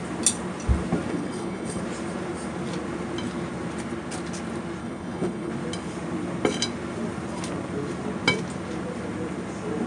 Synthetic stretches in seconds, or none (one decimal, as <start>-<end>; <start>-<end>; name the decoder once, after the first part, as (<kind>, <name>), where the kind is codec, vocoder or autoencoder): 1.1-1.8 (codec, HILCodec); 4.8-5.5